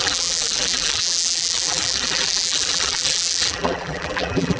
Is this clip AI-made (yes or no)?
yes